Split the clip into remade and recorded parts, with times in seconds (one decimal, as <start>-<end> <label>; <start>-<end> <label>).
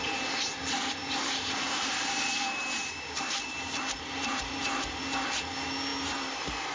0.0-1.0 recorded; 1.0-5.0 remade; 5.0-5.9 recorded; 5.9-6.7 remade